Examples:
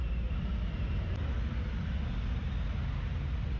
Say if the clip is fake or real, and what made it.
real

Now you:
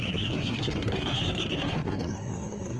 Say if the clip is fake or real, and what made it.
fake, codec, SNAC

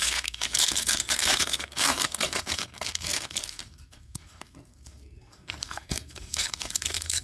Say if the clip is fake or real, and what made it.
fake, codec, SNAC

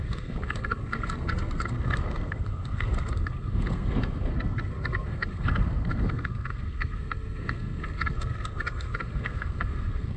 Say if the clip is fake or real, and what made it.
fake, codec, SNAC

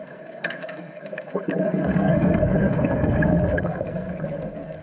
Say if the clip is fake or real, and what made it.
fake, codec, SNAC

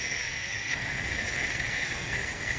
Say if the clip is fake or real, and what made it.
fake, codec, SNAC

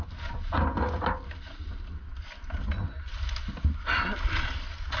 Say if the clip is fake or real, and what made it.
real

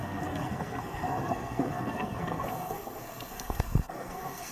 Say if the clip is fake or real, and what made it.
fake, codec, SNAC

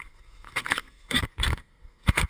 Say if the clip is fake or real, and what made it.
fake, codec, SNAC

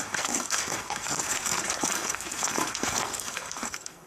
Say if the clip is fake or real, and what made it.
fake, codec, SNAC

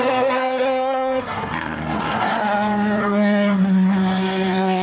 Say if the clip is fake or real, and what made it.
fake, codec, SNAC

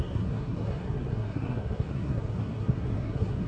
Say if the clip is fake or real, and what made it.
fake, codec, SNAC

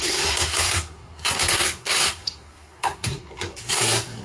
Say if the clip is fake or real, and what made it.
fake, codec, SNAC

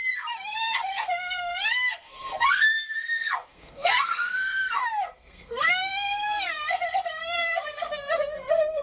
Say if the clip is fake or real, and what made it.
fake, codec, SNAC